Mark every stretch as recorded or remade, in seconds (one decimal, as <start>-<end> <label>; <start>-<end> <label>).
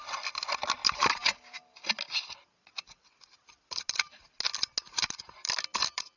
0.0-0.8 remade; 0.8-2.7 recorded; 2.7-4.2 remade; 4.2-4.9 recorded; 4.9-6.2 remade